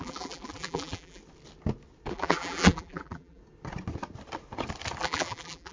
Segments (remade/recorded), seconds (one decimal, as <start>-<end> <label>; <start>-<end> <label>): 0.0-1.2 remade; 1.2-2.1 recorded; 2.1-3.4 remade; 3.4-5.0 recorded; 5.0-5.7 remade